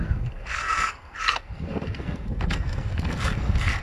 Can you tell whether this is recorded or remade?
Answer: remade